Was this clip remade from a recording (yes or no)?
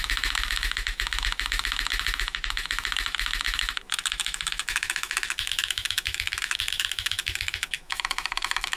yes